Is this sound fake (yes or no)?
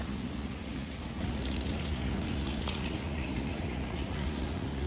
yes